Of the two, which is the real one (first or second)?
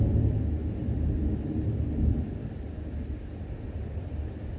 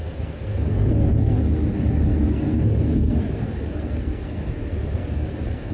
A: first